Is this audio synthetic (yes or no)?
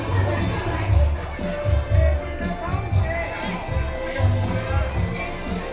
no